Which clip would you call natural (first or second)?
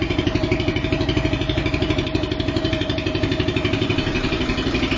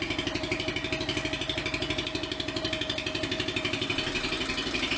second